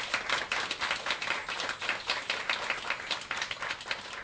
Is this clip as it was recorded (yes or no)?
yes